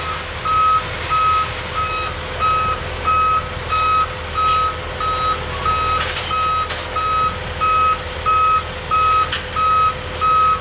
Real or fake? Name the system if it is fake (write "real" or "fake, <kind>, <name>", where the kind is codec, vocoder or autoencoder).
real